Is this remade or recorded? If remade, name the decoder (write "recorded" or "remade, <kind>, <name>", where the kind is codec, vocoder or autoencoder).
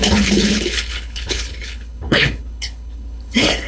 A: remade, codec, HILCodec